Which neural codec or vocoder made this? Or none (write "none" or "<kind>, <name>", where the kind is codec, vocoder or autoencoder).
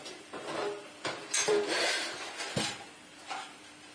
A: vocoder, BigVGAN v2